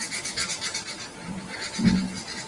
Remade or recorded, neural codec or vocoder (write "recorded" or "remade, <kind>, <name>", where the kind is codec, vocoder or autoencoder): recorded